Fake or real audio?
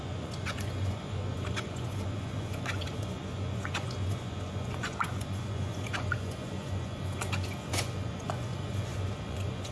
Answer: fake